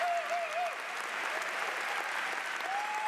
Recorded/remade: recorded